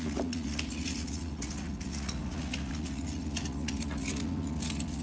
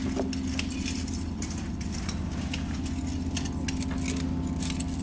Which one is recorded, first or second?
second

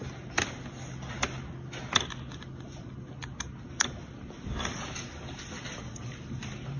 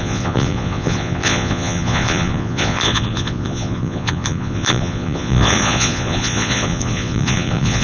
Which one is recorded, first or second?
first